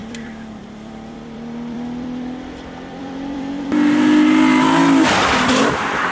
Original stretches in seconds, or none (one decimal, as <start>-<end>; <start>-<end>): 3.7-6.1